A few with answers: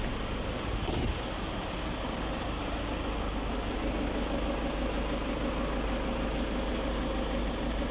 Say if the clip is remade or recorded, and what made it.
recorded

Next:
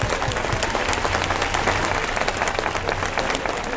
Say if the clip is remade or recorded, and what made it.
recorded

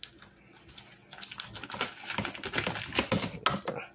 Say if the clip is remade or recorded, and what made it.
recorded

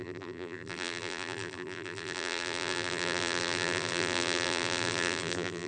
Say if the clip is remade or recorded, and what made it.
remade, vocoder, BigVGAN v2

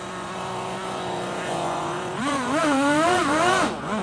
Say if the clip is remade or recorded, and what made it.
remade, vocoder, Vocos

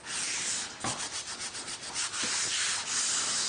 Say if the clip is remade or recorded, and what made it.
recorded